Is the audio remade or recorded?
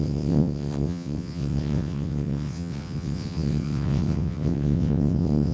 remade